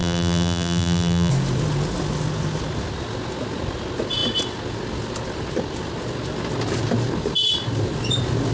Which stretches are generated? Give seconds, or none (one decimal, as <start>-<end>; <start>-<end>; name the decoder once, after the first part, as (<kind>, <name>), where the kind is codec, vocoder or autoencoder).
0.0-1.3 (vocoder, BigVGAN v2)